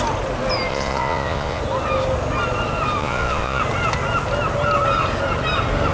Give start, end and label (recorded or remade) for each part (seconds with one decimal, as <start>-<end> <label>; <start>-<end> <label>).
0.0-0.7 recorded; 0.7-1.6 remade; 1.6-3.0 recorded; 3.0-3.6 remade; 3.6-5.9 recorded